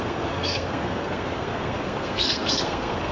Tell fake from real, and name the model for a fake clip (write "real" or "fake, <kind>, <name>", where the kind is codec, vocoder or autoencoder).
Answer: fake, codec, SNAC